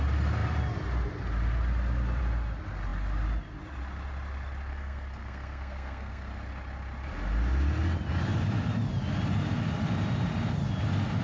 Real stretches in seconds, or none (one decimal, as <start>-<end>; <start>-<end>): 0.0-4.7; 6.3-11.2